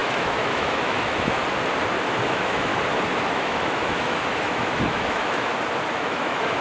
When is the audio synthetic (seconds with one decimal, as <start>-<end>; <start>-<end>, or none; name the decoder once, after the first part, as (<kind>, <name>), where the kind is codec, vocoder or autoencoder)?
0.0-1.4 (autoencoder, DAC-VAE); 2.2-2.7; 3.3-5.5; 6.0-6.6